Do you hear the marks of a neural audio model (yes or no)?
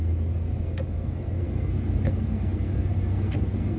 yes